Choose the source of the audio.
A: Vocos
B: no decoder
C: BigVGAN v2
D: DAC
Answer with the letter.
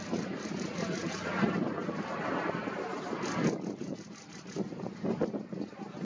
C